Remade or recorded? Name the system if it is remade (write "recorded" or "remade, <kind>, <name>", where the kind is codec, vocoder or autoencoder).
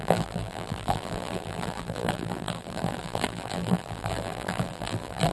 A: remade, vocoder, BigVGAN v2